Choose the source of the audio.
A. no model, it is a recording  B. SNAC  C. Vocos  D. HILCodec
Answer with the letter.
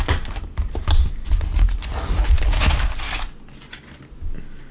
A